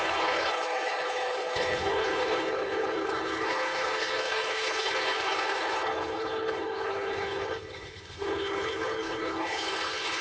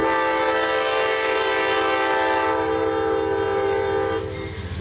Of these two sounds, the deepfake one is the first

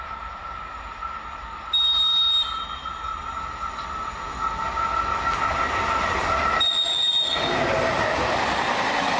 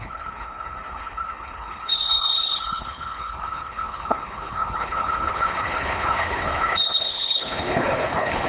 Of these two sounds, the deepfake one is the second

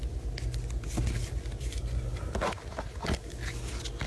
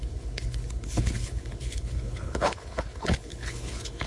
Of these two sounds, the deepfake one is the second